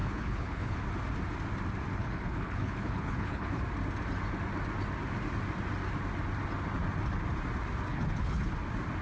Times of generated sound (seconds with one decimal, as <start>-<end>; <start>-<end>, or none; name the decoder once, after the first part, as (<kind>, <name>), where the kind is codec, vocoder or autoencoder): 0.0-0.8 (codec, HILCodec); 2.0-3.6; 7.9-8.5